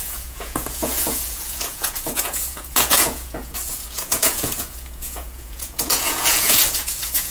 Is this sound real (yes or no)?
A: no